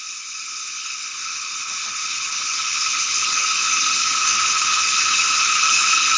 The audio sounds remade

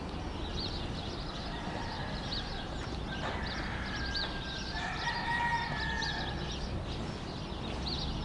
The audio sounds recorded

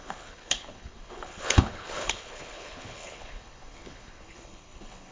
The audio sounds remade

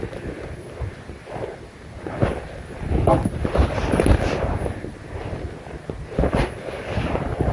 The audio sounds recorded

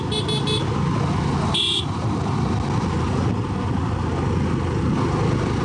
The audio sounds recorded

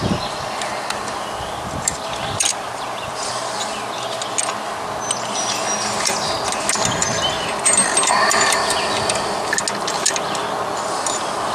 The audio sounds recorded